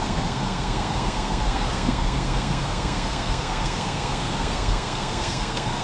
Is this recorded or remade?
remade